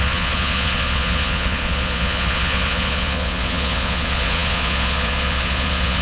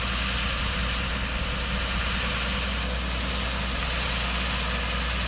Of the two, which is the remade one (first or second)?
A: first